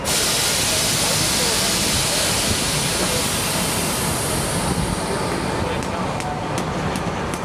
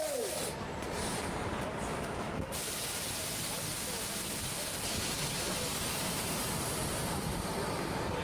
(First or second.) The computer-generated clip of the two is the second